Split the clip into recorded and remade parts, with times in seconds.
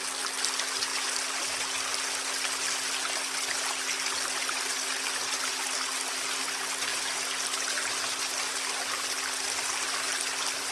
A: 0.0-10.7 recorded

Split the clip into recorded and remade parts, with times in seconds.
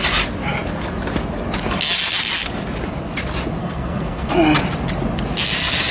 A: 0.0-3.6 recorded; 3.6-4.3 remade; 4.3-5.9 recorded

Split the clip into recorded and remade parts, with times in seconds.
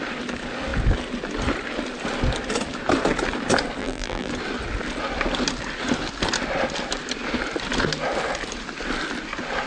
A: 0.0-3.8 recorded; 3.8-4.3 remade; 4.3-9.7 recorded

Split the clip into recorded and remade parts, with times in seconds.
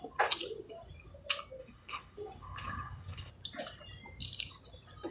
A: 0.0-1.6 recorded; 1.6-3.3 remade; 3.3-5.1 recorded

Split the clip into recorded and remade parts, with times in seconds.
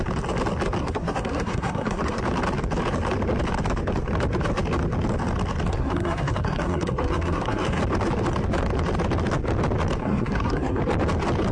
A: 0.0-0.8 recorded; 0.8-2.2 remade; 2.2-5.7 recorded; 5.7-7.8 remade; 7.8-10.0 recorded; 10.0-10.8 remade; 10.8-11.5 recorded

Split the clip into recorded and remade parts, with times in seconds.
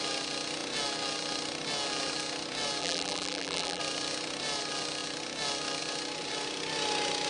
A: 0.0-2.8 recorded; 2.8-3.8 remade; 3.8-7.3 recorded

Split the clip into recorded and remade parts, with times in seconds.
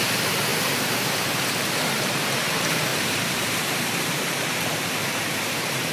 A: 0.0-5.9 remade